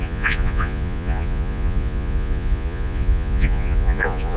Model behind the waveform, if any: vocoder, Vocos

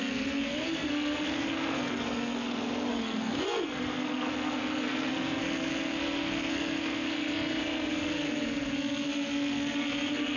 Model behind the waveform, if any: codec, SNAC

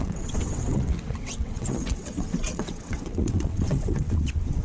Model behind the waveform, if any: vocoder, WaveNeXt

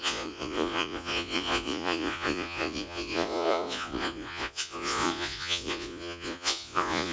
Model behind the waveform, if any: vocoder, Vocos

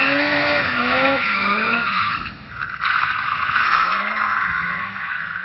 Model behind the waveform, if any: codec, SNAC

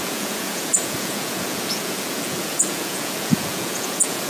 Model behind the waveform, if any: vocoder, Vocos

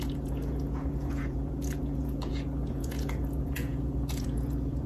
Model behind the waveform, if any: vocoder, Vocos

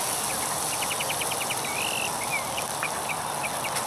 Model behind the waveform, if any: none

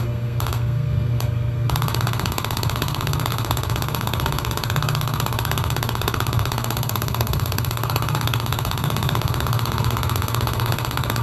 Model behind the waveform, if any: codec, SNAC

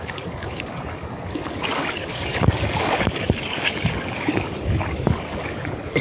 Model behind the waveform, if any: codec, DAC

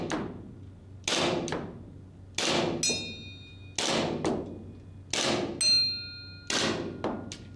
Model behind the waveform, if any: none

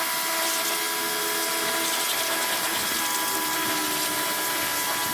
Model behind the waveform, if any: none